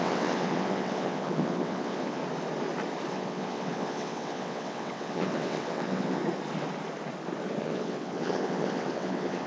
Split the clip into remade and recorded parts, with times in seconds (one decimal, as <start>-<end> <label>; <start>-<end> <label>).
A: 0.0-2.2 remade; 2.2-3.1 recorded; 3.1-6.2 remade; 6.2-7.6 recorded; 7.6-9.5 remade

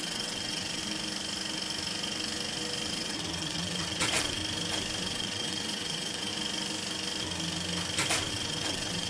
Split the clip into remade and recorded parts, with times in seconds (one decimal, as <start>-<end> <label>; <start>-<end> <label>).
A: 0.0-0.8 remade; 0.8-2.9 recorded; 2.9-4.4 remade; 4.4-5.1 recorded; 5.1-6.3 remade; 6.3-8.3 recorded; 8.3-9.1 remade

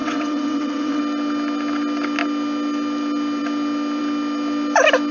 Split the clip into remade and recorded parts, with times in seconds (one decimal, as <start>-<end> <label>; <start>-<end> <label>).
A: 0.0-1.0 remade; 1.0-5.1 recorded

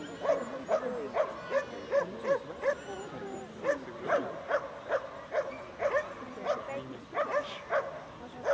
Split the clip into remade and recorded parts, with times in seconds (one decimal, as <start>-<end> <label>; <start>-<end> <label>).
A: 0.0-8.5 recorded

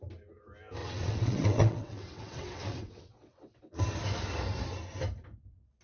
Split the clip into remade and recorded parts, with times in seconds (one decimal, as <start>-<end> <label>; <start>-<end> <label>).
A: 0.0-0.8 recorded; 0.8-3.8 remade; 3.8-5.8 recorded